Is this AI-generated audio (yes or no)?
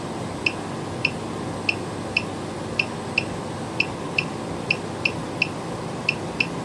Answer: no